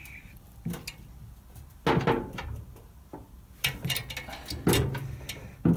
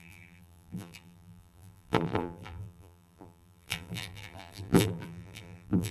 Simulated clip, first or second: second